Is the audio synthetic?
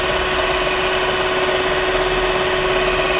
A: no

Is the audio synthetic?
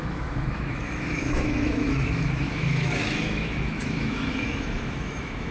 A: yes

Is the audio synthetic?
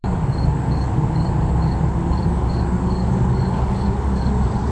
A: yes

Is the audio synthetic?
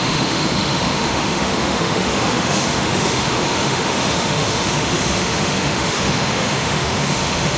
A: yes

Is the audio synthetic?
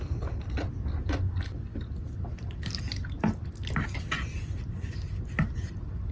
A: no